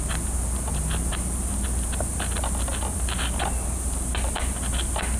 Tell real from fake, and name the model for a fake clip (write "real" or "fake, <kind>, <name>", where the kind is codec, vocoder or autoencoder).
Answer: real